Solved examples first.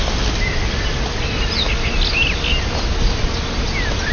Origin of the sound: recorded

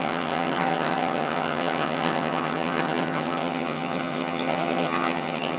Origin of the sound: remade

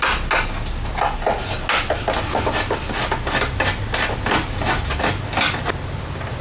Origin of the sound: recorded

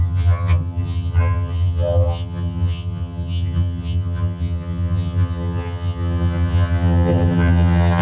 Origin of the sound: remade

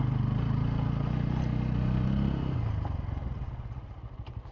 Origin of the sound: recorded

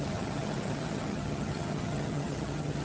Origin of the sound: remade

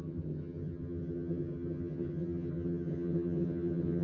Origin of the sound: remade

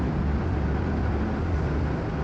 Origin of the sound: recorded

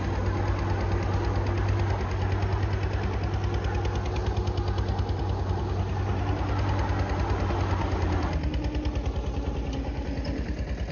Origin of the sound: recorded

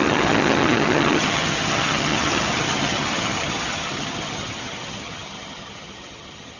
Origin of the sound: remade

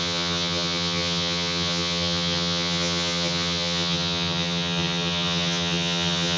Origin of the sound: remade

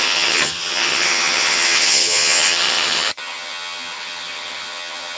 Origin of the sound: remade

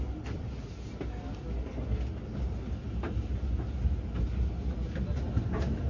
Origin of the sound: recorded